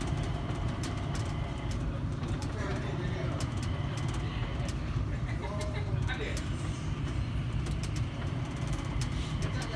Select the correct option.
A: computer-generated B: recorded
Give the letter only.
A